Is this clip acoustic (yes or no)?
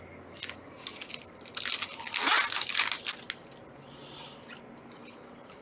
yes